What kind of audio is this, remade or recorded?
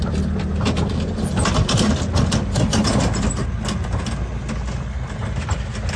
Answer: recorded